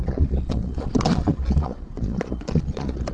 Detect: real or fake fake